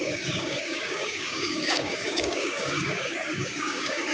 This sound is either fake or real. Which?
fake